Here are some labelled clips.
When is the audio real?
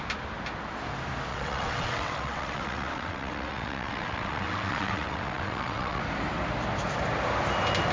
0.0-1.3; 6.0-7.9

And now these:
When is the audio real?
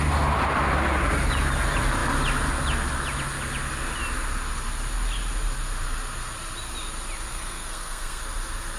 0.0-7.3; 8.2-8.8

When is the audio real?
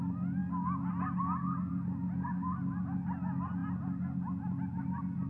0.0-5.3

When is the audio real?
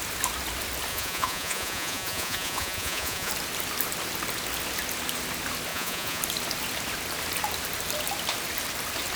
0.0-0.9; 3.3-5.7; 6.2-9.2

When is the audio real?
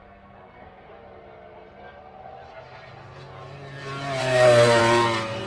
0.9-4.2; 4.8-5.5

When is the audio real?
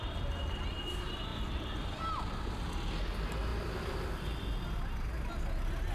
0.0-1.3; 2.2-5.9